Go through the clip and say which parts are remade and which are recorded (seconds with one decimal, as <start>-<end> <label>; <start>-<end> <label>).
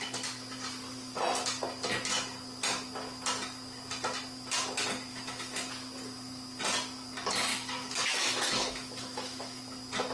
0.0-5.1 recorded; 5.1-5.7 remade; 5.7-7.5 recorded; 7.5-9.6 remade; 9.6-10.1 recorded